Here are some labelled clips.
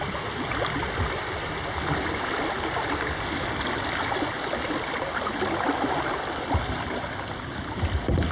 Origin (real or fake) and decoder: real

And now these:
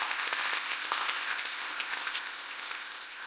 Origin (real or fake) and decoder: fake, codec, ZipCodec